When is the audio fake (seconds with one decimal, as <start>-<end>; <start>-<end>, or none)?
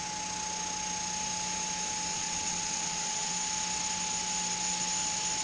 2.1-3.3